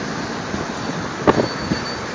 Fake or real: real